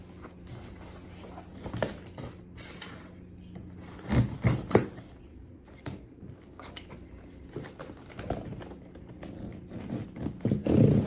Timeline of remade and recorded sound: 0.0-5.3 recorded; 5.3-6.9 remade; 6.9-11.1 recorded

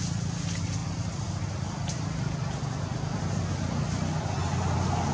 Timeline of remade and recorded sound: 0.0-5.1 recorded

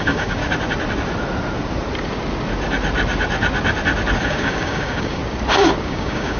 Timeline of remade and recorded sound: 0.0-0.4 remade; 0.4-4.2 recorded; 4.2-5.2 remade; 5.2-5.8 recorded; 5.8-6.4 remade

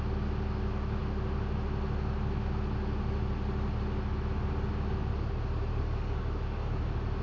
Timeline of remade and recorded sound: 0.0-5.7 recorded; 5.7-6.7 remade; 6.7-7.2 recorded

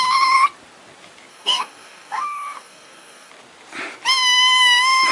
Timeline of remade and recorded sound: 0.0-1.3 recorded; 1.3-3.3 remade; 3.3-5.1 recorded

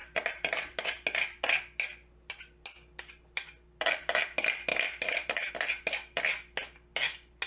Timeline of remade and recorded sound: 0.0-7.5 recorded